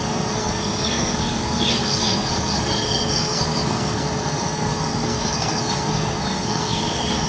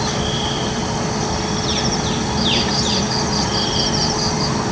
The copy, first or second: first